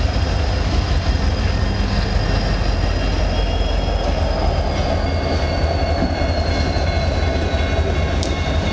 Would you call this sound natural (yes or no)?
yes